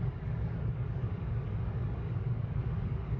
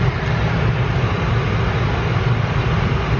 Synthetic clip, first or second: first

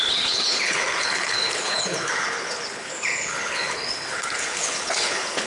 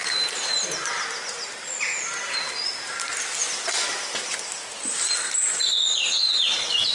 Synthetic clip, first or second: first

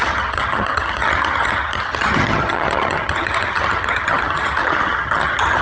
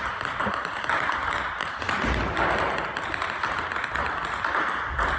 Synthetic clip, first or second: first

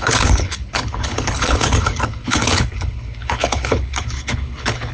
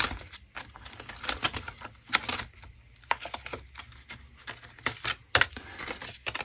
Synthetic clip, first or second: first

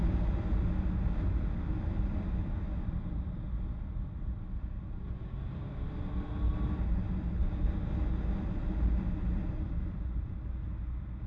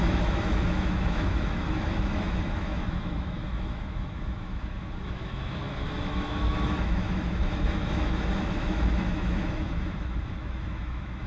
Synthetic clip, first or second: second